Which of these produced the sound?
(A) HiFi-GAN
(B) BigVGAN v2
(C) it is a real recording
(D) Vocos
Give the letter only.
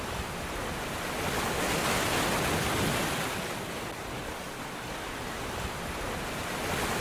C